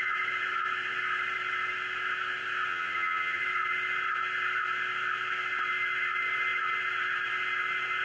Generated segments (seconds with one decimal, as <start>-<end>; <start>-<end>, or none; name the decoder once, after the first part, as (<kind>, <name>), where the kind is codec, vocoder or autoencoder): 2.7-3.4 (vocoder, HiFi-GAN)

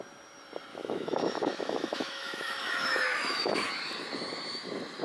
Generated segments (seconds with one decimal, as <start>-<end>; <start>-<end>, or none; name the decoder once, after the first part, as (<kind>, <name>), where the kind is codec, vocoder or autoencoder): 0.7-3.7 (autoencoder, DAC-VAE)

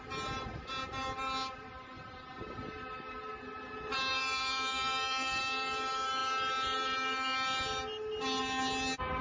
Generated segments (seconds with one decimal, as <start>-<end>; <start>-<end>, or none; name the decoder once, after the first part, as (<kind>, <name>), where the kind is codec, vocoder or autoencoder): 4.1-5.4 (vocoder, BigVGAN v2)

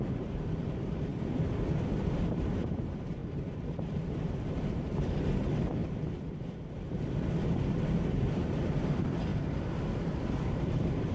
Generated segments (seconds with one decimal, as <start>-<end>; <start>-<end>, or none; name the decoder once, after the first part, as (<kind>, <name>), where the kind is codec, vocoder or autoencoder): 0.0-1.1 (vocoder, BigVGAN v2); 2.3-5.8; 8.1-9.3; 10.5-11.1

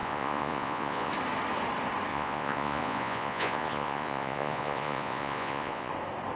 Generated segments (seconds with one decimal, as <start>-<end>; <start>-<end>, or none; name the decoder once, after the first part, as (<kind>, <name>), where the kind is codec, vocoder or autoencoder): 0.0-1.1 (vocoder, Vocos); 2.1-5.9

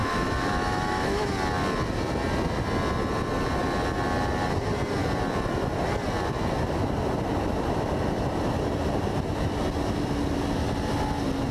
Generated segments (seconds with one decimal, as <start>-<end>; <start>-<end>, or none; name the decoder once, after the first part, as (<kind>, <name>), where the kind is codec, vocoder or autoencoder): 0.0-1.3 (autoencoder, DAC-VAE)

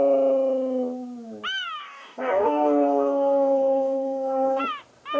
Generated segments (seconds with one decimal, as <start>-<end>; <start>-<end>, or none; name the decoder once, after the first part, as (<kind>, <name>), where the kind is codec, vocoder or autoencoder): 1.8-4.6 (codec, DAC)

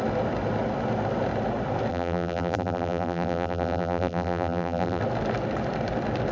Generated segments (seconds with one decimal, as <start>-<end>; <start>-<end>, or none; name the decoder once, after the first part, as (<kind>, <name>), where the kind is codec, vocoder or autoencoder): 1.9-5.0 (vocoder, BigVGAN v2)